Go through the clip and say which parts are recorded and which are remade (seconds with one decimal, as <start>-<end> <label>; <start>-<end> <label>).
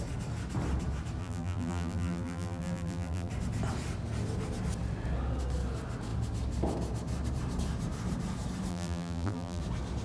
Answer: 0.0-1.2 recorded; 1.2-3.3 remade; 3.3-8.7 recorded; 8.7-9.6 remade; 9.6-10.0 recorded